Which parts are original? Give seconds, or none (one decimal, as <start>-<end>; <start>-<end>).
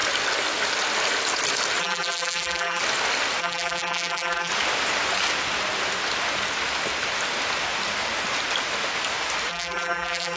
0.0-1.8; 2.8-3.4; 4.5-9.5